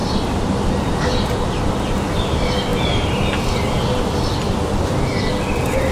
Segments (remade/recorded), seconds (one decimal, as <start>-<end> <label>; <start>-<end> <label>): 0.0-0.9 remade; 0.9-5.9 recorded